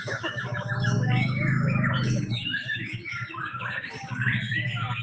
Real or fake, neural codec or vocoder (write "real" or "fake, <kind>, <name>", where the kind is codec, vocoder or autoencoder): fake, codec, DAC